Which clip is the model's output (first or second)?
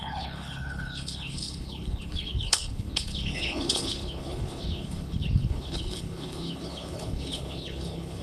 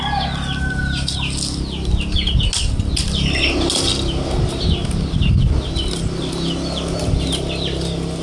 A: first